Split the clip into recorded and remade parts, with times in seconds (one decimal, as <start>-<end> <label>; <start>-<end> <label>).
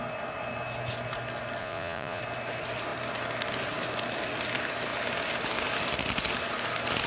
0.0-1.6 recorded; 1.6-2.2 remade; 2.2-7.1 recorded